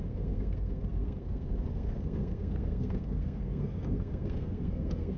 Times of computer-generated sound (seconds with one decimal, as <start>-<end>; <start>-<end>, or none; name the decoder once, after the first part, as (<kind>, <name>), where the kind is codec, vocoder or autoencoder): 0.0-5.2 (codec, SNAC)